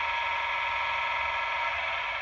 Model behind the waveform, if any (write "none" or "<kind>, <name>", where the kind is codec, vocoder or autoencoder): none